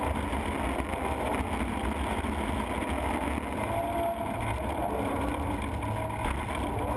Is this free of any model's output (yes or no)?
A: yes